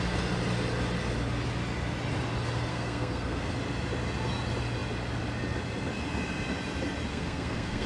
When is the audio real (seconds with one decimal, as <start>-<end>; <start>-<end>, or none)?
0.0-2.7; 3.5-7.1